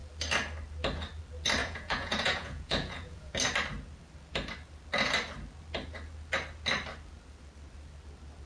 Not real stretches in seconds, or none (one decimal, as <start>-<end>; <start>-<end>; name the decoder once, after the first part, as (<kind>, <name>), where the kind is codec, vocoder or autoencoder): 1.6-3.3 (vocoder, Vocos)